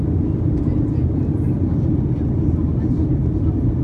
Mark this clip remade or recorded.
recorded